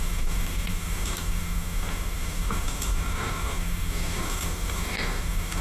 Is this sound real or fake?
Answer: fake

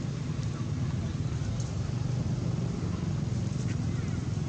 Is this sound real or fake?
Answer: real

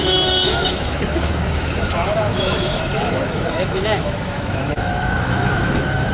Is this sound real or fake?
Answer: fake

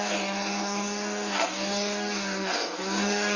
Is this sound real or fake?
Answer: fake